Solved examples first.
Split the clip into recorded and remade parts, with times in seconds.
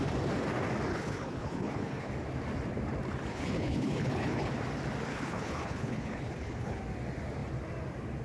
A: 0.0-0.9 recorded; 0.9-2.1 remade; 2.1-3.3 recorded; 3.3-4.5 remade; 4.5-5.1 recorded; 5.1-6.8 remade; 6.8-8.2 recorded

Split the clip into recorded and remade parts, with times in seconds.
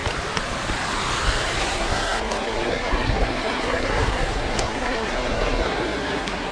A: 0.0-1.6 recorded; 1.6-6.5 remade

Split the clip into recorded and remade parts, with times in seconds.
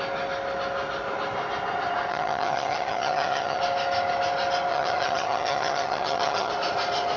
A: 0.0-2.1 recorded; 2.1-3.6 remade; 3.6-4.7 recorded; 4.7-6.5 remade; 6.5-7.2 recorded